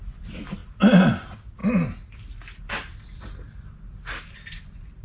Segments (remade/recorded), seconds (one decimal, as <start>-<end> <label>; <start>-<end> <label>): 0.0-5.0 recorded